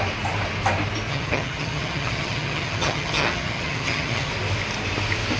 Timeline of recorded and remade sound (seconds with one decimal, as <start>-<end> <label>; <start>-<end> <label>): 0.0-1.1 recorded; 1.1-4.3 remade; 4.3-5.4 recorded